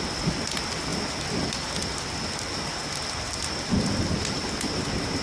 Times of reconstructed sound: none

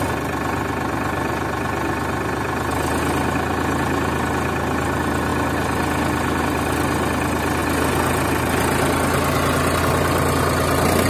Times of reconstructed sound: none

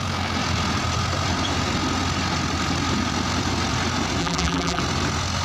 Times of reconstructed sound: 4.2-4.8 (vocoder, BigVGAN v2)

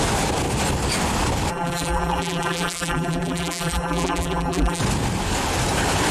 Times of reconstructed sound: 1.5-4.8 (vocoder, BigVGAN v2)

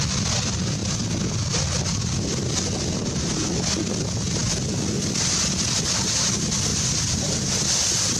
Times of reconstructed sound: 6.7-7.6 (vocoder, BigVGAN v2)

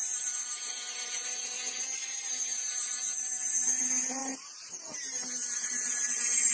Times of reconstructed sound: 2.7-3.8 (vocoder, BigVGAN v2); 4.2-6.5